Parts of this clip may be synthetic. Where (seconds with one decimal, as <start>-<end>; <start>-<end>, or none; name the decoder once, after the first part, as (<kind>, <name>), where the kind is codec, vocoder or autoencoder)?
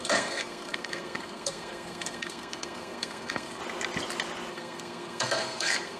0.0-3.6 (codec, SNAC); 4.5-6.0